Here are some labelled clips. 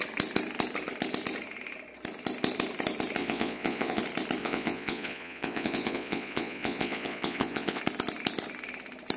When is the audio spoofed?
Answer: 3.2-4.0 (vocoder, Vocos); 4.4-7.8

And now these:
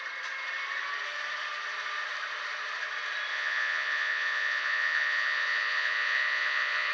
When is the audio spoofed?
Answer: 3.3-6.9 (vocoder, Vocos)

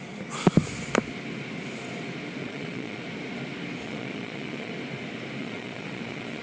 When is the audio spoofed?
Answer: 2.4-3.0 (vocoder, Vocos); 3.8-4.7; 5.4-6.4

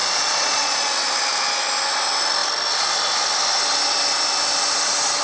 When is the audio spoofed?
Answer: 0.0-0.9 (vocoder, Vocos)

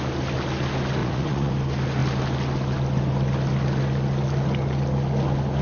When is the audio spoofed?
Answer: 1.0-1.5 (vocoder, Vocos)

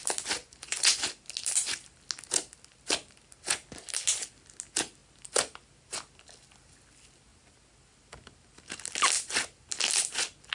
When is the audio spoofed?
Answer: 0.4-1.0 (vocoder, Vocos)

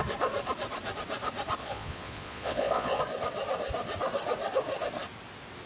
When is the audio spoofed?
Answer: 1.6-3.0 (vocoder, Vocos)